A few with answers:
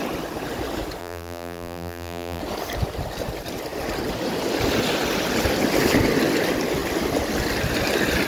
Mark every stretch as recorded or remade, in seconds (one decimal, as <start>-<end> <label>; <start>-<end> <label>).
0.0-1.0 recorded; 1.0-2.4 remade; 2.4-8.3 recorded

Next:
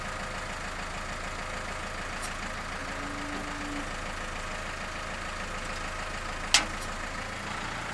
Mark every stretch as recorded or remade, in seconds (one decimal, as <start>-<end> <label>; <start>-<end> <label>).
0.0-7.9 recorded

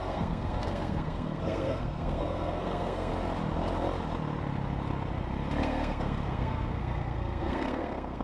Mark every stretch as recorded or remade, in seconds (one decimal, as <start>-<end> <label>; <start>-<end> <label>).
0.0-3.1 remade; 3.1-5.6 recorded; 5.6-8.2 remade

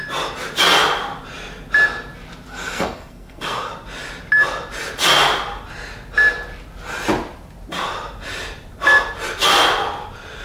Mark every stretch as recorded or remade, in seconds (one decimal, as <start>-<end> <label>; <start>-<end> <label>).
0.0-2.5 recorded; 2.5-3.7 remade; 3.7-10.4 recorded

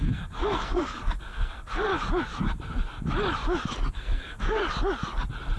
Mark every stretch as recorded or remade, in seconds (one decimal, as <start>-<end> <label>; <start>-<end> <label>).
0.0-1.9 remade; 1.9-3.9 recorded; 3.9-4.6 remade; 4.6-5.6 recorded